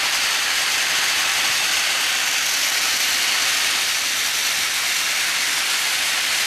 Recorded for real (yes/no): no